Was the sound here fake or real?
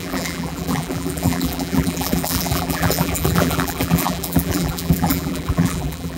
fake